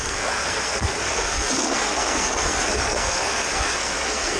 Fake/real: fake